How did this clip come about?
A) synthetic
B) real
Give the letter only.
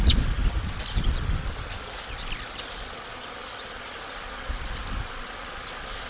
B